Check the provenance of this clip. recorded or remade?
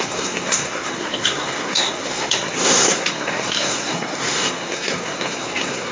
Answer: remade